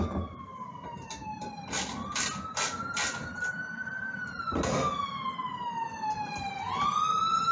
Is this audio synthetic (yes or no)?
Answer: no